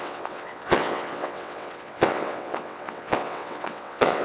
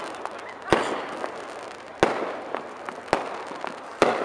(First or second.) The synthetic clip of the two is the first